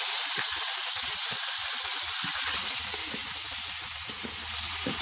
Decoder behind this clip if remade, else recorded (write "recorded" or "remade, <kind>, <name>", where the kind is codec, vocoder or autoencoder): recorded